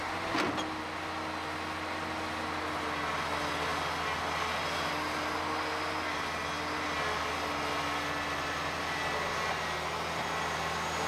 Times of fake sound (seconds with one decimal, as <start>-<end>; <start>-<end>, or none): none